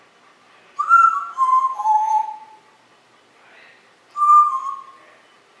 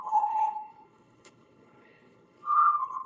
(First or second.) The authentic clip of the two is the first